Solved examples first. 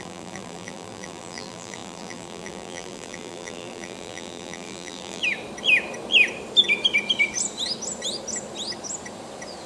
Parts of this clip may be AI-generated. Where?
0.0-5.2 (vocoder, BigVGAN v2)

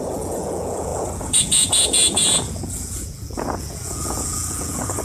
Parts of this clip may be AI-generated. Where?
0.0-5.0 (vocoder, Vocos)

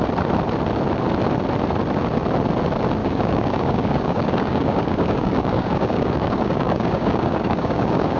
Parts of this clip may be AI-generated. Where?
3.0-8.2 (codec, DAC)

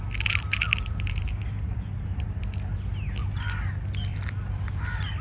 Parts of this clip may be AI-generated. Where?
0.7-2.3 (vocoder, BigVGAN v2)